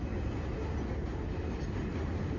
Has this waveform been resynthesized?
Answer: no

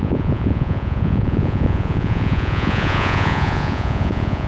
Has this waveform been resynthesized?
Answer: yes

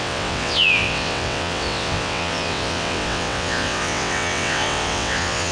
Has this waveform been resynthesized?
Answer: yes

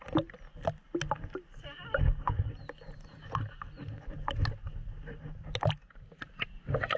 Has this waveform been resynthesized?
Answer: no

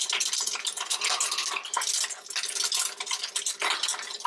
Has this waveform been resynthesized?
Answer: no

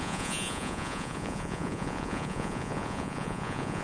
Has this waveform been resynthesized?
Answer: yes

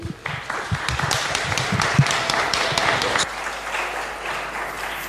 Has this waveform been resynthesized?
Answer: yes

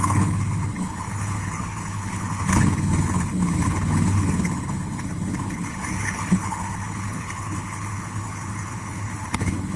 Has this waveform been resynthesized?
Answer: yes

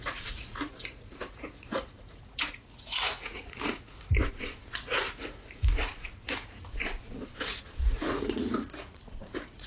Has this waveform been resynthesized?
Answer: yes